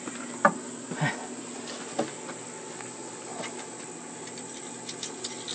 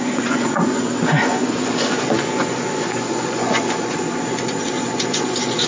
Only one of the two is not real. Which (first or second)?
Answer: second